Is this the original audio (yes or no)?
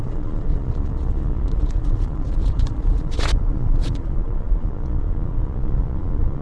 no